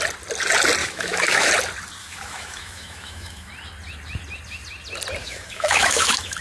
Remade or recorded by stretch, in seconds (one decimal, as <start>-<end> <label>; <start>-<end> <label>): 0.0-0.8 recorded; 0.8-1.5 remade; 1.5-2.0 recorded; 2.0-3.5 remade; 3.5-5.2 recorded; 5.2-6.4 remade

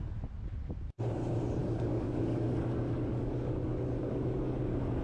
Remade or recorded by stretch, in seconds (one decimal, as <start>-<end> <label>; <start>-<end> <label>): 0.0-1.6 recorded; 1.6-4.6 remade; 4.6-5.0 recorded

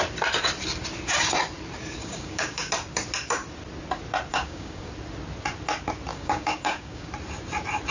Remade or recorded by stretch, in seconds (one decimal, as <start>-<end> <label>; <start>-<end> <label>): 0.0-2.0 recorded; 2.0-2.7 remade; 2.7-4.3 recorded; 4.3-4.9 remade; 4.9-6.1 recorded; 6.1-7.1 remade; 7.1-7.9 recorded

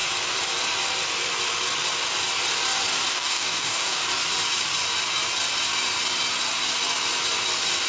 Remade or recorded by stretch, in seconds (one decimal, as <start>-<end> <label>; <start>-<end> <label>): 0.0-3.1 recorded; 3.1-4.0 remade; 4.0-7.9 recorded

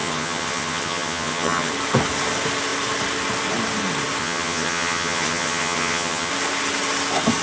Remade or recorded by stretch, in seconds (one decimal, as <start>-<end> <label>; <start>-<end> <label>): 0.0-1.7 remade; 1.7-4.2 recorded; 4.2-6.3 remade; 6.3-7.4 recorded

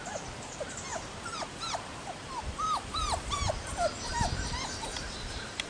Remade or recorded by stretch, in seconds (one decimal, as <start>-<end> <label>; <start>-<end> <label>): 0.0-0.9 recorded; 0.9-3.4 remade; 3.4-4.1 recorded; 4.1-5.7 remade

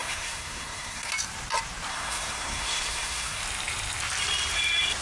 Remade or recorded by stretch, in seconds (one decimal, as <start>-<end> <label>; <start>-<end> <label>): 0.0-1.1 remade; 1.1-1.9 recorded; 1.9-3.4 remade; 3.4-5.0 recorded

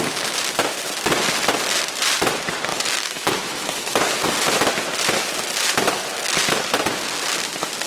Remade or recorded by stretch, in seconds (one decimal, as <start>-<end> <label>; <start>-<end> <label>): 0.0-2.7 recorded; 2.7-4.3 remade; 4.3-7.9 recorded